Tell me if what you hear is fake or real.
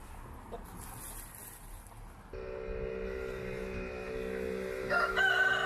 real